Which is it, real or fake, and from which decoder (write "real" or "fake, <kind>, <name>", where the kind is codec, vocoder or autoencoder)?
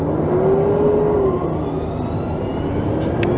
real